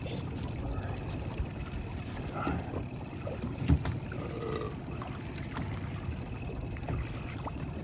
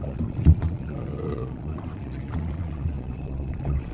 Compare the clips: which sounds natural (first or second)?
first